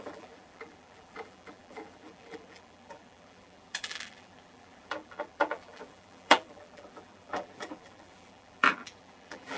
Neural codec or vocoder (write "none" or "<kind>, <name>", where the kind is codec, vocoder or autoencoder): vocoder, BigVGAN v2